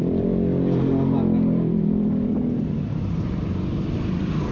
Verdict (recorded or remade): remade